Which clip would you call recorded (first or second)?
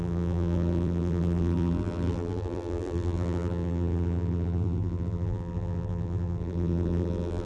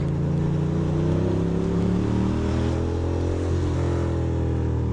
second